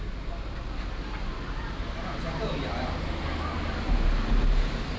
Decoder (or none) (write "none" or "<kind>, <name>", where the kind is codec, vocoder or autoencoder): none